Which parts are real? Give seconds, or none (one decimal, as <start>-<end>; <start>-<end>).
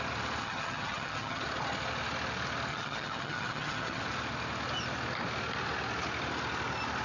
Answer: 0.0-0.4; 1.4-2.7; 4.0-7.0